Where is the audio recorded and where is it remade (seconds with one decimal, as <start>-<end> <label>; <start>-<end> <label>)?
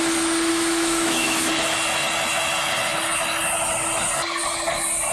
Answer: 0.0-0.5 recorded; 0.5-1.5 remade; 1.5-5.1 recorded